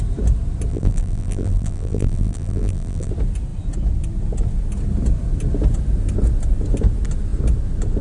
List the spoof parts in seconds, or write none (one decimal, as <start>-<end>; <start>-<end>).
0.7-3.1